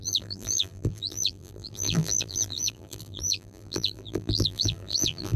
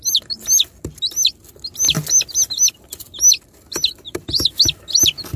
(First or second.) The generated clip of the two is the first